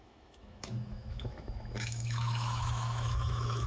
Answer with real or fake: fake